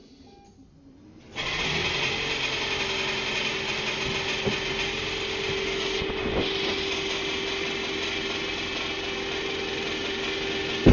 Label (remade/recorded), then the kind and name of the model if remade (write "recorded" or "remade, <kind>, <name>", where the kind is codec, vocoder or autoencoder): recorded